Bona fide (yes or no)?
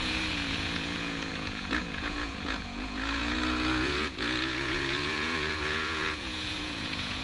no